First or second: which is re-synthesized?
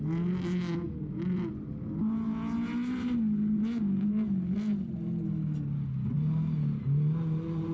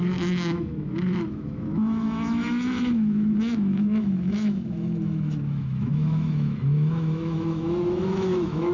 second